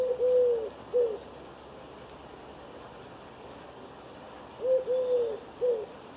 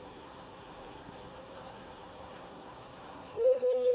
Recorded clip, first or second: first